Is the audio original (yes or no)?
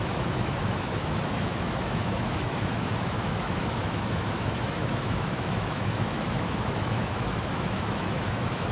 no